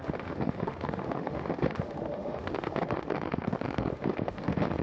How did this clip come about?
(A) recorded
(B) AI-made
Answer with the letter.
B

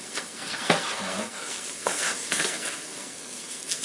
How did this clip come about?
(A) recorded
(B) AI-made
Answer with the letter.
B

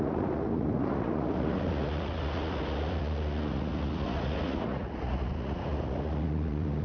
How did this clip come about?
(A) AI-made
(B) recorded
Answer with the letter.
A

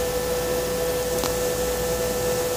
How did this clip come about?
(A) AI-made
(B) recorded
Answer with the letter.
B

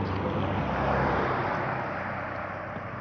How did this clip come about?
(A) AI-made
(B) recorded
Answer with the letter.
B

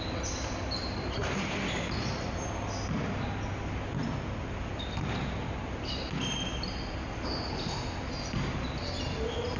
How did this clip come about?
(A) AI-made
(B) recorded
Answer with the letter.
B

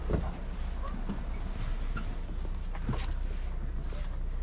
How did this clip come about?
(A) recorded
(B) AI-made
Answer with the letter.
A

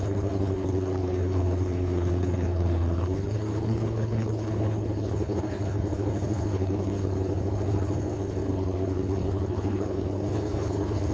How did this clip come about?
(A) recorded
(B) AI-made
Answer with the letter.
B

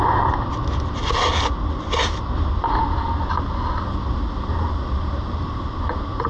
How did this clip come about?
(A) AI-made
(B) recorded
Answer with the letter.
B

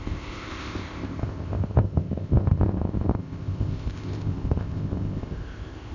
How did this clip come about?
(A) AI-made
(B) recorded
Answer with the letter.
A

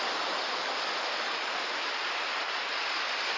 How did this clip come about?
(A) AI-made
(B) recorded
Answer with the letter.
B